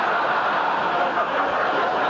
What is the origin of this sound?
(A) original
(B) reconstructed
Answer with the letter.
A